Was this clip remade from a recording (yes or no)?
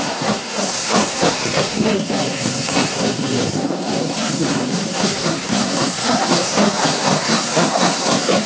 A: yes